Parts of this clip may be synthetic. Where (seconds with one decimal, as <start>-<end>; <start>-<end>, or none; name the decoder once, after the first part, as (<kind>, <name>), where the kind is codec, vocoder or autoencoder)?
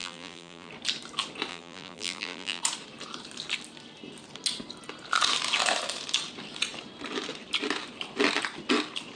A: 0.0-0.7 (vocoder, BigVGAN v2); 1.5-2.6